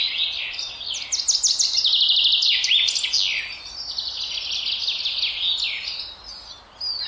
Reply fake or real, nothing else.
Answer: real